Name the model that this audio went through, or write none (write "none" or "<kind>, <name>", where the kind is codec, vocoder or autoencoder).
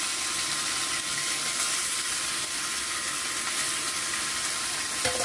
none